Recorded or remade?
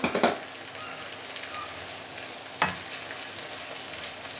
recorded